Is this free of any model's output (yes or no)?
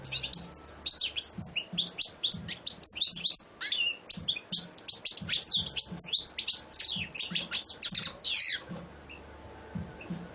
yes